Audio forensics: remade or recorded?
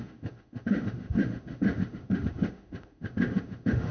remade